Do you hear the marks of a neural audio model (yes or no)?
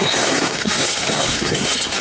yes